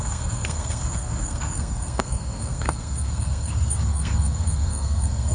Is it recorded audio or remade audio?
remade